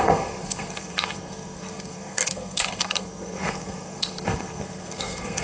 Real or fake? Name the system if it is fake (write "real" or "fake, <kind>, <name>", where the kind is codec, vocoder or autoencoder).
fake, codec, SNAC